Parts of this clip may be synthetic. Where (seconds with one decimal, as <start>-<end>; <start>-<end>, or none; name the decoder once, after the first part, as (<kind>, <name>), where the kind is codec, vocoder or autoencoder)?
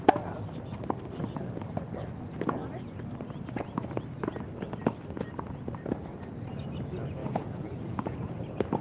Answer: 7.2-8.3 (vocoder, Vocos)